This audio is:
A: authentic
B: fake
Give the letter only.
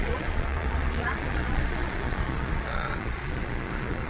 B